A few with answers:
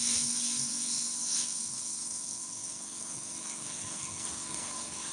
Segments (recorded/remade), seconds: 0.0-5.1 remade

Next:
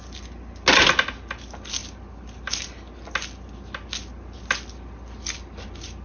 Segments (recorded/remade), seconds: 0.0-6.0 recorded

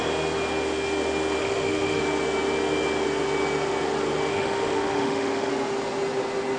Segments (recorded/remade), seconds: 0.0-1.4 recorded; 1.4-2.0 remade; 2.0-4.3 recorded; 4.3-5.5 remade; 5.5-6.6 recorded

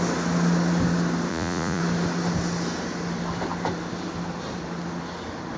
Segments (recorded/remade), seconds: 0.0-1.3 recorded; 1.3-1.8 remade; 1.8-5.6 recorded

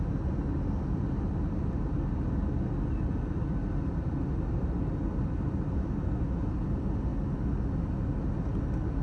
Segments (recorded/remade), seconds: 0.0-9.0 recorded

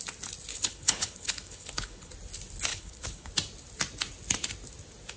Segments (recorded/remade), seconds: 0.0-0.5 recorded; 0.5-2.1 remade; 2.1-2.7 recorded; 2.7-3.3 remade; 3.3-5.2 recorded

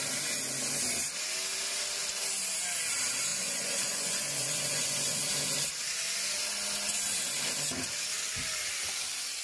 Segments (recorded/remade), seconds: 0.0-3.3 recorded; 3.3-5.2 remade; 5.2-9.4 recorded